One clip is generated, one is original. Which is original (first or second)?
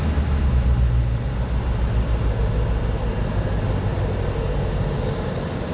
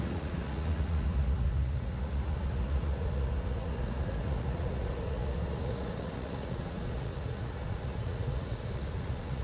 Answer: first